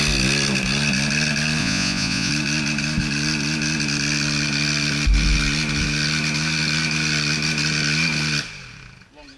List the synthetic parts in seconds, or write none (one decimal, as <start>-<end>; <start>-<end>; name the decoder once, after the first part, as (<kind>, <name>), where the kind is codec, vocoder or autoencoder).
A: 1.6-2.3 (vocoder, Vocos)

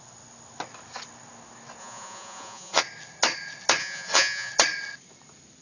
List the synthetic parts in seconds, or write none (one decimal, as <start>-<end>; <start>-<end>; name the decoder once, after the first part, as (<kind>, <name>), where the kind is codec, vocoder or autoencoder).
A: 1.8-2.8 (vocoder, Vocos); 3.8-4.5

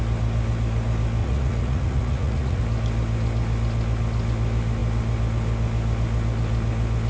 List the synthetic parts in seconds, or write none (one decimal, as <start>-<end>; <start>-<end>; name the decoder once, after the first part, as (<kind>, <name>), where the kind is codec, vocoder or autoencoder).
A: 1.2-2.6 (vocoder, Vocos)

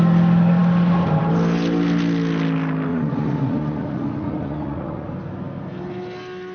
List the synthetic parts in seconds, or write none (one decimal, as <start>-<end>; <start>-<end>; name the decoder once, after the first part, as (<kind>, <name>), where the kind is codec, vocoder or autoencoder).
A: 2.9-5.1 (vocoder, Vocos)